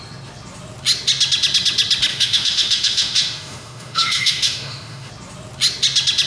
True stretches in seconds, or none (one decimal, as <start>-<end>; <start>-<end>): 0.0-2.1; 5.1-6.3